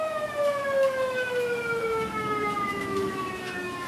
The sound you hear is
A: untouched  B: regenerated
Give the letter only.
B